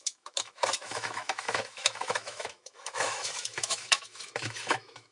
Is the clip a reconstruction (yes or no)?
yes